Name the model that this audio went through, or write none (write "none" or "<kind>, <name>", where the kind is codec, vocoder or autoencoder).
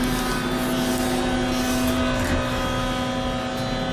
none